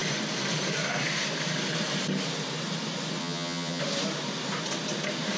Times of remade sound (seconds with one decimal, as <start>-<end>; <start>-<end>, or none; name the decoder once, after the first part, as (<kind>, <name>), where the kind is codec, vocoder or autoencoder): 3.2-3.8 (vocoder, HiFi-GAN)